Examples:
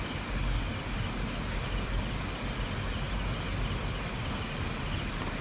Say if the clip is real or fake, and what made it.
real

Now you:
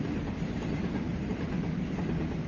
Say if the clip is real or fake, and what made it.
real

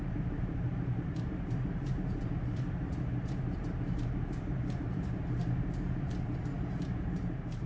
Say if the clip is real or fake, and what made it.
fake, vocoder, BigVGAN v2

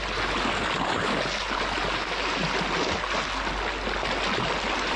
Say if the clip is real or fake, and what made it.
real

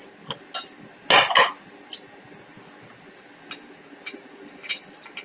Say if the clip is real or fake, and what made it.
real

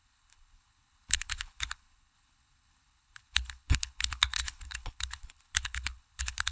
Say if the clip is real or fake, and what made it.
fake, codec, HILCodec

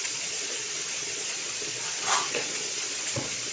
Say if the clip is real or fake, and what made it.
fake, vocoder, Vocos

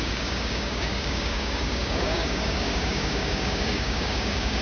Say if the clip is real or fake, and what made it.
fake, codec, DAC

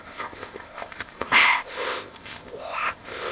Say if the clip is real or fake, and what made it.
fake, codec, ZipCodec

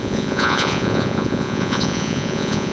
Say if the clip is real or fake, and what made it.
fake, vocoder, Vocos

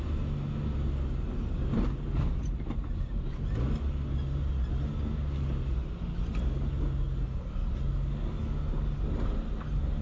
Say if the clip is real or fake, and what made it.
real